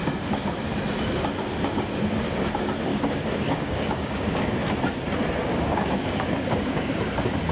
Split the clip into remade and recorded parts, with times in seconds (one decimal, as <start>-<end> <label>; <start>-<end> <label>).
0.0-2.9 recorded; 2.9-4.5 remade; 4.5-5.4 recorded; 5.4-7.0 remade; 7.0-7.5 recorded